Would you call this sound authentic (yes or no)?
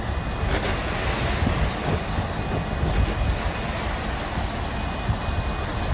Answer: yes